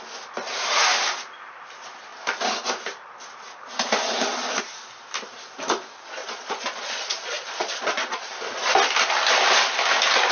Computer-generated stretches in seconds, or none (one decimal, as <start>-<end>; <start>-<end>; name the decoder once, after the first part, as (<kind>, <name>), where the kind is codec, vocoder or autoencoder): 6.2-8.3 (vocoder, Vocos)